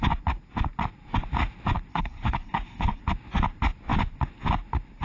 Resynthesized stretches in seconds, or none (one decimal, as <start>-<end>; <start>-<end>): 1.9-3.0